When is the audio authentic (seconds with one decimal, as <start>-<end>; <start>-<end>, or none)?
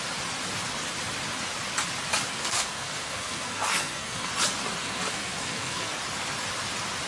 0.0-2.3; 4.3-4.8; 5.9-7.1